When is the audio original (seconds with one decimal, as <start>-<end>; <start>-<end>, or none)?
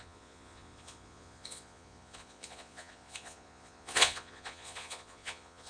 none